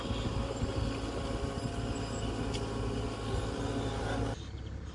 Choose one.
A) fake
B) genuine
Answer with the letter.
B